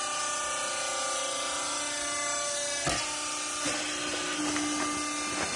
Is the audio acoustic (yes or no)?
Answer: yes